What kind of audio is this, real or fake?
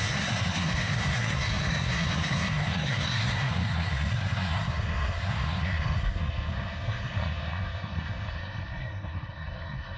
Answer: fake